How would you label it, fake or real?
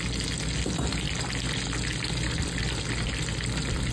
real